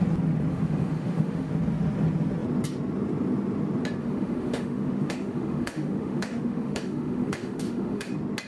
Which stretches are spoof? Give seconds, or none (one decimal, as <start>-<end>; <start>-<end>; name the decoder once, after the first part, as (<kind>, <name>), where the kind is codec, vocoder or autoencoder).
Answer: 0.5-1.5 (autoencoder, DAC-VAE); 4.0-8.1